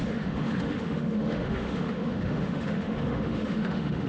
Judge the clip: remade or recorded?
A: remade